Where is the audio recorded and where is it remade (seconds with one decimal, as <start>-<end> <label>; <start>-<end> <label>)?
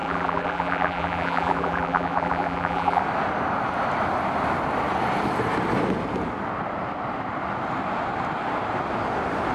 0.0-3.0 remade; 3.0-9.5 recorded